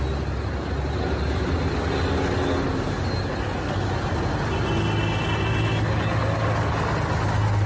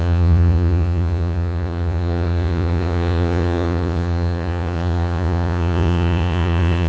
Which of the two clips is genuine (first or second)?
first